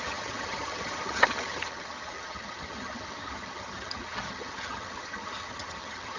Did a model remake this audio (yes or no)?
yes